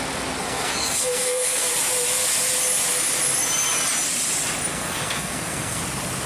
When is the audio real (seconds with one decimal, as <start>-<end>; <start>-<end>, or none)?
0.0-0.4; 1.7-4.7; 5.8-6.3